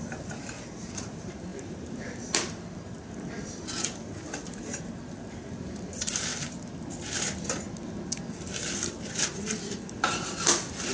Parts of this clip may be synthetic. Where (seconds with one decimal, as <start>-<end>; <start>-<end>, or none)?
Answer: 0.0-6.3